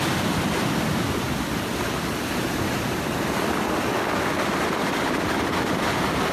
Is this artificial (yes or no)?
no